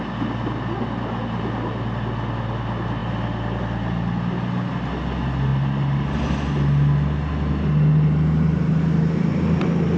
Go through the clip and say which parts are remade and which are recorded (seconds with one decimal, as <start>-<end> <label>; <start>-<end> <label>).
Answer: 0.0-10.0 recorded